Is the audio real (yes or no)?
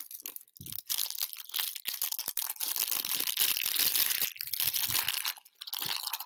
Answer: yes